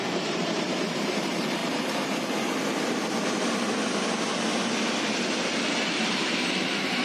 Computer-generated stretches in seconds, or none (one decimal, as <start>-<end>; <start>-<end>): 0.0-1.6; 5.8-7.0